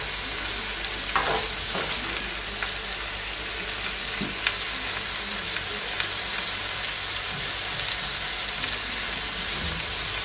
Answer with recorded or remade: recorded